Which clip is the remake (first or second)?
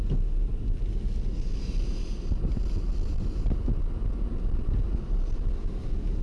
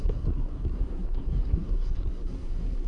second